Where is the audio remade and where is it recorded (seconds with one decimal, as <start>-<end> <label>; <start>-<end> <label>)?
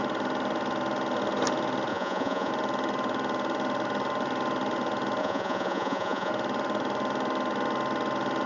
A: 0.0-1.9 recorded; 1.9-2.5 remade; 2.5-5.2 recorded; 5.2-6.3 remade; 6.3-8.5 recorded